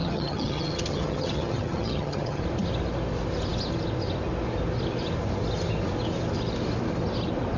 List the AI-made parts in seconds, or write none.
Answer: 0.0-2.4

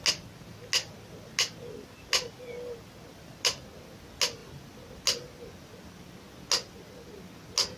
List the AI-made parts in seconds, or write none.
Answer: none

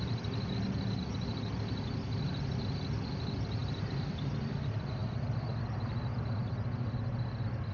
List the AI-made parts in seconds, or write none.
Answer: 3.6-4.4

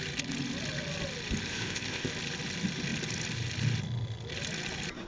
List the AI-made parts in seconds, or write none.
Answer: 1.5-2.1

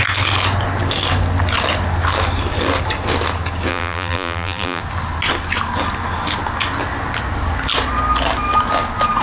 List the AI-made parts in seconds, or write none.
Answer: 3.7-4.8

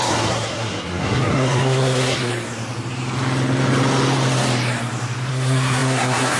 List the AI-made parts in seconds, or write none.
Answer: 0.0-2.3; 5.3-6.4

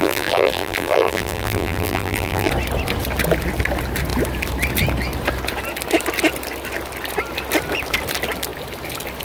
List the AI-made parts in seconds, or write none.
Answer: 0.0-2.5

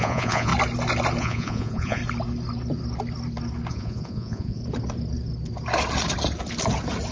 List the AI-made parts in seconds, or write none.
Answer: 0.0-0.5; 1.2-2.0; 3.7-4.6